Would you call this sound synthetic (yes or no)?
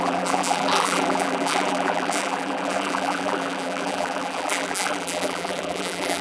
yes